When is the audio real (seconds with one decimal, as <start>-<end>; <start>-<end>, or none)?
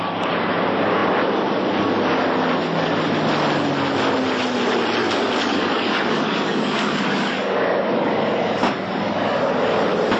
0.0-5.0; 9.4-10.2